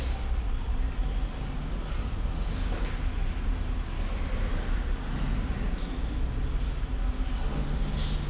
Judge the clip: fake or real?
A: real